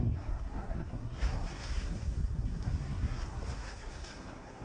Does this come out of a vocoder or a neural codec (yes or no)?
yes